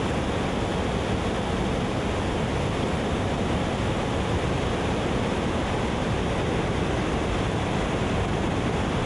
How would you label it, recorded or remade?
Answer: recorded